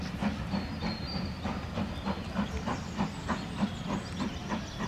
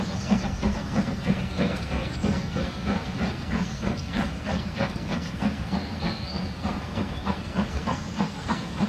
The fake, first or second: second